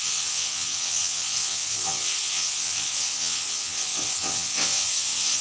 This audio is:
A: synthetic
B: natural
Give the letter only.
A